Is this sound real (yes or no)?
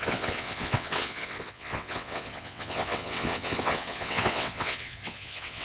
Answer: no